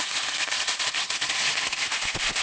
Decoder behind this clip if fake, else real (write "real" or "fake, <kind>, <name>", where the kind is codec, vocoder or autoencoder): real